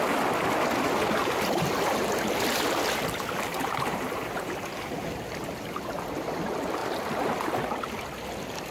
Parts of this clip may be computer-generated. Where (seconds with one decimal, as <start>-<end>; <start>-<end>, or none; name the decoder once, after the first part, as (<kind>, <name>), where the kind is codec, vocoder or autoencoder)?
1.2-1.9 (vocoder, BigVGAN v2); 3.5-4.5